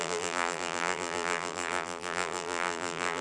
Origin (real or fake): fake